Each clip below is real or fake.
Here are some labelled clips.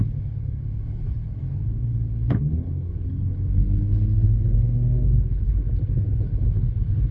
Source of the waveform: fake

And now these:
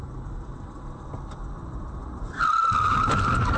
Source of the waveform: fake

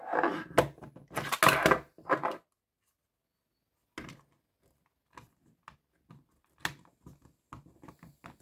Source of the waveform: real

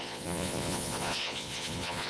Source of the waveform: fake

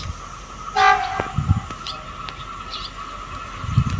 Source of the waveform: real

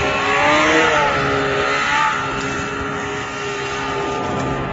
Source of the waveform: real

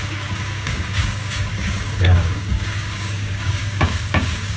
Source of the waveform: fake